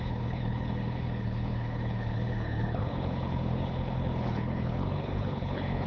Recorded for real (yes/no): no